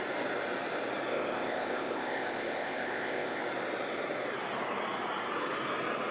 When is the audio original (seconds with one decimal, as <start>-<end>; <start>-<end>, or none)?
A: 0.0-1.1; 3.4-6.1